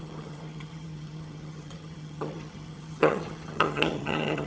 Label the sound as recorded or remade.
remade